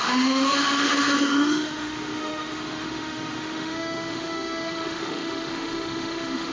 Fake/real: fake